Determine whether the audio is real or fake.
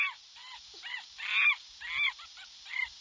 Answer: real